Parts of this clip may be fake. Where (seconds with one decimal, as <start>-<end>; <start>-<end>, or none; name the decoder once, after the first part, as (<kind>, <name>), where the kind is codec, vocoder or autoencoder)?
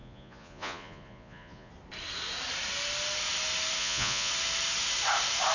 0.0-1.7 (vocoder, Vocos); 3.8-4.3